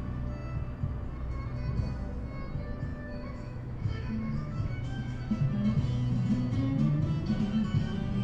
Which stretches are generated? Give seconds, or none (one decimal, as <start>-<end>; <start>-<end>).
2.9-5.2